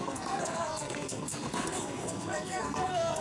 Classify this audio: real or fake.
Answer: fake